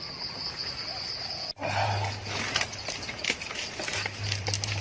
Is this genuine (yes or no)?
yes